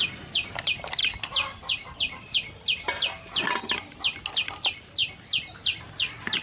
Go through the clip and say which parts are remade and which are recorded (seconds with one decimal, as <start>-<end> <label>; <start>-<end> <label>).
0.0-6.4 recorded